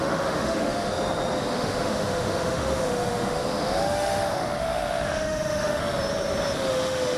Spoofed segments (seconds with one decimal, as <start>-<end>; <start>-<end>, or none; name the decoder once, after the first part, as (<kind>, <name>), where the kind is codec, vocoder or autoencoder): 0.0-0.9 (autoencoder, DAC-VAE); 1.4-5.8; 6.7-7.2